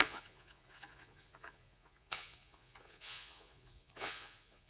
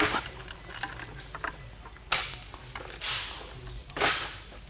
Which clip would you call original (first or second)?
second